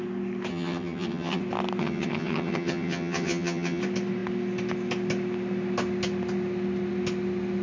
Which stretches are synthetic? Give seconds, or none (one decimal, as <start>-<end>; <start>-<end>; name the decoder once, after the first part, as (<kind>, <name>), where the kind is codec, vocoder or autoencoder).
0.5-1.4 (vocoder, HiFi-GAN); 1.8-3.8